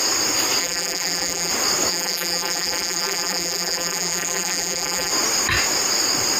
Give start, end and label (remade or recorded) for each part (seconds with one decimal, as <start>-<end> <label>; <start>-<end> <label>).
0.0-0.6 recorded; 0.6-1.5 remade; 1.5-1.9 recorded; 1.9-5.1 remade; 5.1-6.4 recorded